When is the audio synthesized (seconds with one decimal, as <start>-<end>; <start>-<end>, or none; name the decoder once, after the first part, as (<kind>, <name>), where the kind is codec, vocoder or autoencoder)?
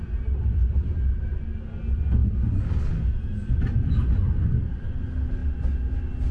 none